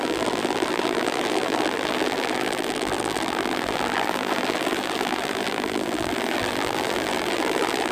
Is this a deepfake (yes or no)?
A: yes